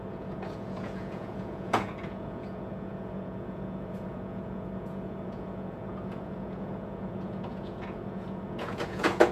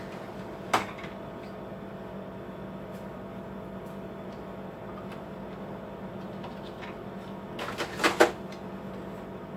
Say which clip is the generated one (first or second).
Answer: first